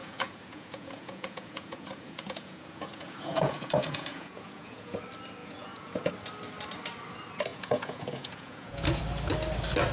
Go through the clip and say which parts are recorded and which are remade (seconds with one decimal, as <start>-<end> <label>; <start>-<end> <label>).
0.0-5.0 remade; 5.0-5.4 recorded; 5.4-6.1 remade; 6.1-7.5 recorded; 7.5-9.0 remade; 9.0-9.9 recorded